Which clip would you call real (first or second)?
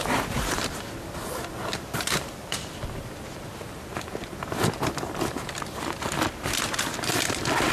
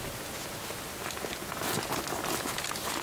second